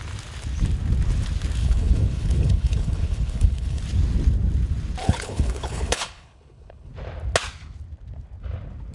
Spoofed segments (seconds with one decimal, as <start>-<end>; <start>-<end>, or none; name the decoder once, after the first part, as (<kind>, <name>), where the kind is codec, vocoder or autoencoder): 1.6-3.8 (codec, HILCodec); 5.0-6.9